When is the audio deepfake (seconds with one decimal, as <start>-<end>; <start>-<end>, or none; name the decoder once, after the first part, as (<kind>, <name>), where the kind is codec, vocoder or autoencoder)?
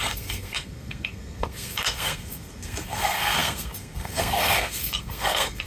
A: 0.0-5.7 (codec, SNAC)